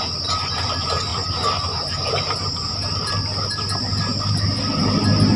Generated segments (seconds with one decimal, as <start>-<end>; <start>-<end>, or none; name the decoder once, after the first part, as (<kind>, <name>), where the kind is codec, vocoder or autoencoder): none

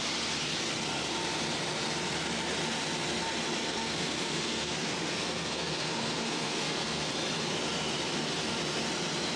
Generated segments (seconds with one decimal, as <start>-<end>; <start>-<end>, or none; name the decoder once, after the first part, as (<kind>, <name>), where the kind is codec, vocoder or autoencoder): 3.6-7.1 (codec, SNAC)

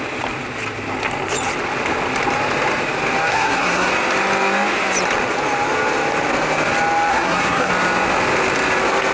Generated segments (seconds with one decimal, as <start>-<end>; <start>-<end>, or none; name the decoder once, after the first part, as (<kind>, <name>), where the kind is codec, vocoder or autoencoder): 3.3-3.9 (codec, SNAC); 7.1-7.7

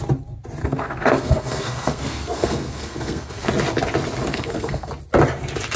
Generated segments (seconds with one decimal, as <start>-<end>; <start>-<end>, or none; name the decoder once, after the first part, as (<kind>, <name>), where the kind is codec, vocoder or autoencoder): 0.6-3.5 (codec, SNAC); 4.3-4.9

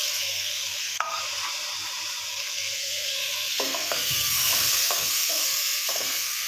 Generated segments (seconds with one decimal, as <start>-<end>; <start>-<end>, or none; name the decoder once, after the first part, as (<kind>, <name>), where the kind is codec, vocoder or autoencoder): 0.0-1.2 (codec, SNAC); 2.3-6.5